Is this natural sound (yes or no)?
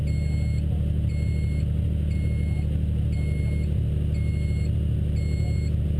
yes